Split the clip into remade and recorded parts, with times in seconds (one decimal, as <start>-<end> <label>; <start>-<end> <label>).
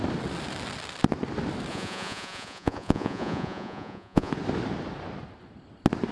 0.0-1.7 recorded; 1.7-4.3 remade; 4.3-6.1 recorded